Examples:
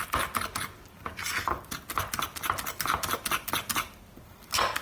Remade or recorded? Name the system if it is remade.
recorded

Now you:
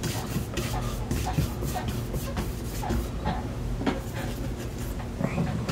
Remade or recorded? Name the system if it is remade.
remade, vocoder, BigVGAN v2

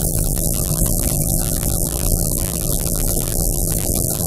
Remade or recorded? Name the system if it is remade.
remade, vocoder, BigVGAN v2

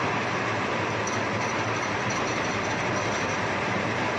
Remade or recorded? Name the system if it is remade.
remade, vocoder, BigVGAN v2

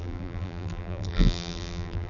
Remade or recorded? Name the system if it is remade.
remade, vocoder, BigVGAN v2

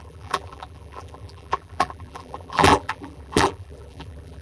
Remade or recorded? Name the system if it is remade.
remade, vocoder, BigVGAN v2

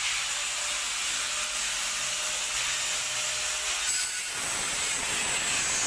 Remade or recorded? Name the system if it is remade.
recorded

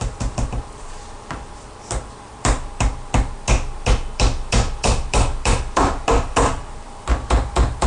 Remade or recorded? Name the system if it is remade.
remade, vocoder, BigVGAN v2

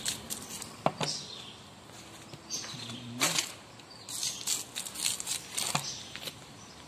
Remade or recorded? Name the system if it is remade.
recorded